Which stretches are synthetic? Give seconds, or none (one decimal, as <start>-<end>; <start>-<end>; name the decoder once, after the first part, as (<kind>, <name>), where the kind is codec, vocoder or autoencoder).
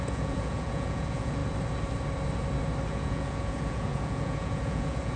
0.0-1.4 (vocoder, Vocos); 2.9-5.2